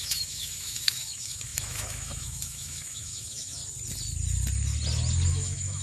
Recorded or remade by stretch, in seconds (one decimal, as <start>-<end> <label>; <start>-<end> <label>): 0.0-3.6 remade; 3.6-5.3 recorded; 5.3-5.8 remade